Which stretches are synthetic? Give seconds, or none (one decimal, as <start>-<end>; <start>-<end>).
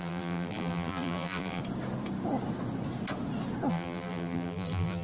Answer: 0.0-1.6; 3.7-5.0